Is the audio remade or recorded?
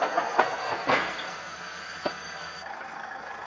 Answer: remade